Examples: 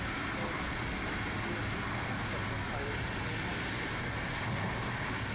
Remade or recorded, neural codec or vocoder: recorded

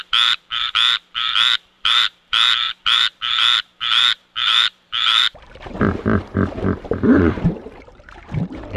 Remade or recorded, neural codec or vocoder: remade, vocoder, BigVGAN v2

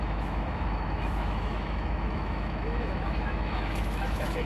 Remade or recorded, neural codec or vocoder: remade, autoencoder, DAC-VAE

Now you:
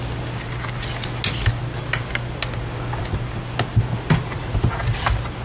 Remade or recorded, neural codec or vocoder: recorded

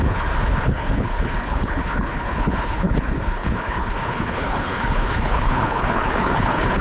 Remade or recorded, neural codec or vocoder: remade, codec, HILCodec